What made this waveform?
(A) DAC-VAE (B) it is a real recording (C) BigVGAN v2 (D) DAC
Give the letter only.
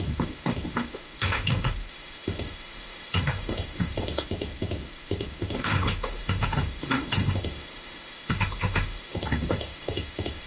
A